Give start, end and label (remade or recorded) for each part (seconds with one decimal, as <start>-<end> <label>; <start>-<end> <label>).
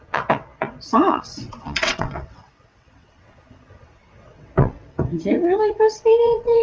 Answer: 0.0-6.6 remade